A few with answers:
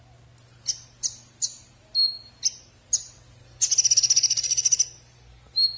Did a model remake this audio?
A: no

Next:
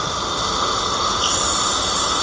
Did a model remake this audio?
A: no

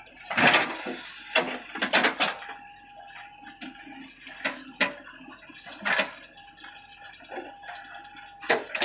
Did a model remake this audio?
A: no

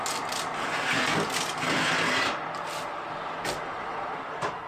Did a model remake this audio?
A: no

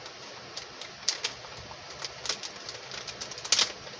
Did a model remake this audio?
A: no